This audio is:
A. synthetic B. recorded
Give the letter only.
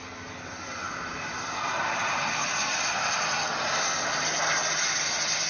B